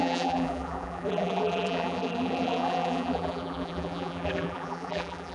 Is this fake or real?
fake